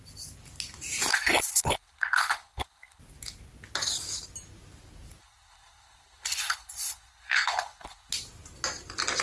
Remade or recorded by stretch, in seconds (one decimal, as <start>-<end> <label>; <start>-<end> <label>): 0.0-1.1 recorded; 1.1-3.0 remade; 3.0-5.2 recorded; 5.2-8.1 remade; 8.1-9.2 recorded